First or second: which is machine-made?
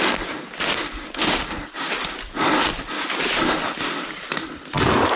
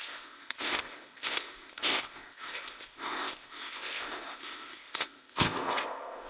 second